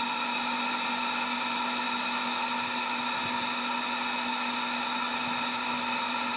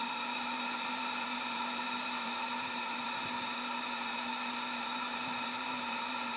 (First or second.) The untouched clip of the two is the first